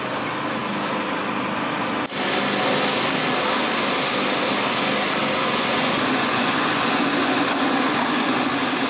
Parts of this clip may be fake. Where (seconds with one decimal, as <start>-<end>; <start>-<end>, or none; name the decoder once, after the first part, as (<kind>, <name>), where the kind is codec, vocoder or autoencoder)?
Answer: 5.2-8.5 (vocoder, Vocos)